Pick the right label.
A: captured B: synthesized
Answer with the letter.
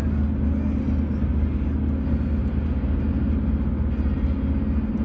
A